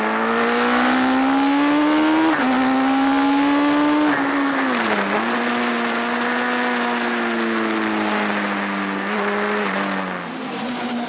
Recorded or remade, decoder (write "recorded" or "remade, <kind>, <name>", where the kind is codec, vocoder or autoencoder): recorded